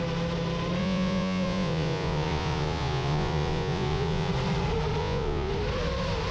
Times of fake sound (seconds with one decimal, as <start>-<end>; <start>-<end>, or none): 0.8-4.3; 5.0-5.5